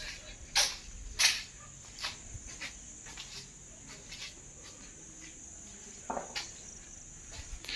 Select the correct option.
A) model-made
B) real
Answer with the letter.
B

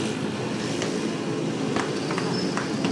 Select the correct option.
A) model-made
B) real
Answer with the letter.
B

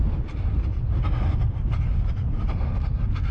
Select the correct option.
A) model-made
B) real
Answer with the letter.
B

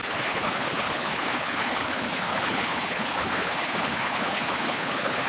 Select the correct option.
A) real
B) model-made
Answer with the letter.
B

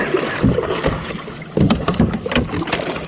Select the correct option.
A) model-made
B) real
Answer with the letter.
B